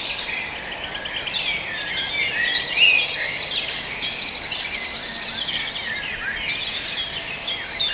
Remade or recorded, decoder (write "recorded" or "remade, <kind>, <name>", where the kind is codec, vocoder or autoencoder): recorded